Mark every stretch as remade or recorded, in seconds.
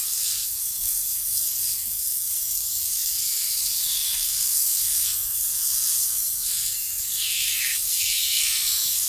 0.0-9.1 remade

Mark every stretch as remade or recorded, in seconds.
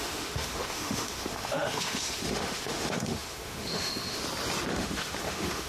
0.0-4.2 remade; 4.2-4.7 recorded; 4.7-5.7 remade